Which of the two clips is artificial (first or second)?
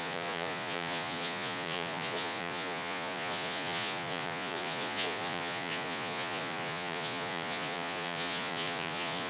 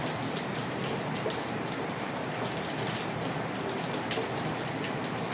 first